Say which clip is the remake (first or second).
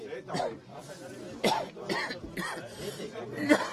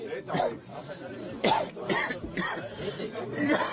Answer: second